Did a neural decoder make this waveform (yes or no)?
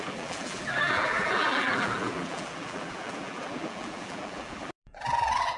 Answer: yes